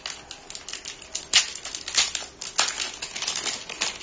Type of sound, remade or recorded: recorded